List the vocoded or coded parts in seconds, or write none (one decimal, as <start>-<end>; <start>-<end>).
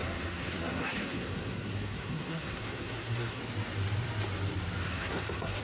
0.0-3.4; 4.8-5.6